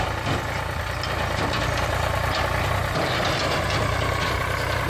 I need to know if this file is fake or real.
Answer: real